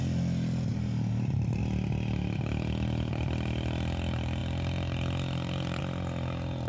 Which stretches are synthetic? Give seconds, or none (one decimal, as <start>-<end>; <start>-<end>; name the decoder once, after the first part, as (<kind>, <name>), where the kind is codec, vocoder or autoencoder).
0.7-1.6 (vocoder, BigVGAN v2)